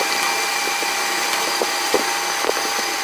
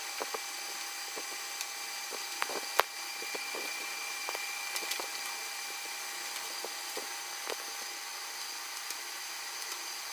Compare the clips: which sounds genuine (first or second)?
second